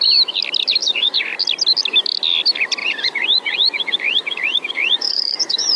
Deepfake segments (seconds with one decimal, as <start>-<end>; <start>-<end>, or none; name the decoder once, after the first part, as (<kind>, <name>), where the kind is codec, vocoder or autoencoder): 0.8-1.4 (vocoder, Vocos); 2.8-5.8